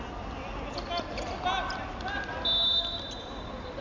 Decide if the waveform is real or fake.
real